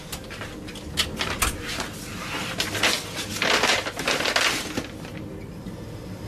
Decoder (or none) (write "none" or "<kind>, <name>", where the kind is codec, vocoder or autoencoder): none